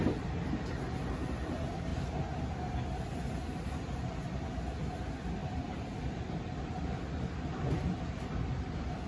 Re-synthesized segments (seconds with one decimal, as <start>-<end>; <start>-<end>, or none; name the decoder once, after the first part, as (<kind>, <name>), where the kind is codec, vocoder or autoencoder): 5.4-9.1 (vocoder, BigVGAN v2)